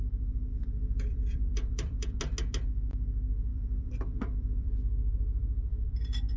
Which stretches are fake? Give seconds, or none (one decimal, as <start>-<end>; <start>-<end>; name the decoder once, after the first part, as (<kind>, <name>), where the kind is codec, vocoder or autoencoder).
0.5-2.2 (vocoder, BigVGAN v2); 3.5-4.8; 5.7-6.4